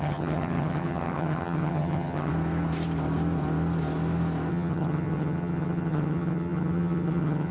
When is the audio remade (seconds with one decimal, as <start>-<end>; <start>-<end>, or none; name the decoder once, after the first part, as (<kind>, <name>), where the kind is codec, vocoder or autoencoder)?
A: 0.0-2.3 (vocoder, HiFi-GAN); 4.5-7.5